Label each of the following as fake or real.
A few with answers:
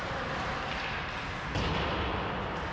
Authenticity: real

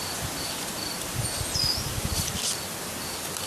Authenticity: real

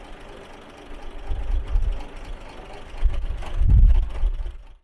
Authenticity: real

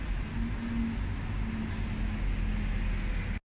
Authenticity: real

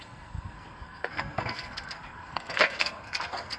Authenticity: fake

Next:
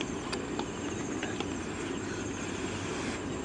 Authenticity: real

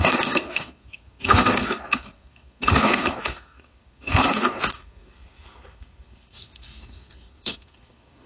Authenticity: fake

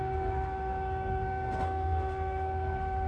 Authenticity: fake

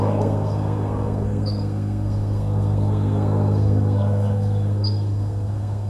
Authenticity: fake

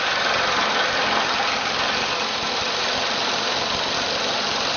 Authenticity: real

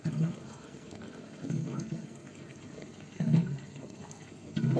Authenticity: fake